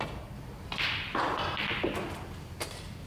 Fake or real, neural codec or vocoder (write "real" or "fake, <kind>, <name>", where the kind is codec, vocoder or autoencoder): real